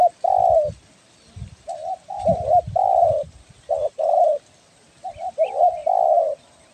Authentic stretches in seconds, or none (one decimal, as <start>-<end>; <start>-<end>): 0.0-1.8; 3.5-6.7